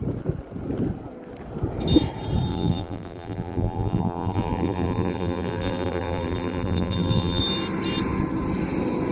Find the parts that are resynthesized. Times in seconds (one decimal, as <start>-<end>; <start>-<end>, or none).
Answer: 2.5-7.4